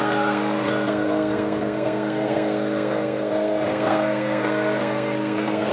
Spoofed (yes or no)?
yes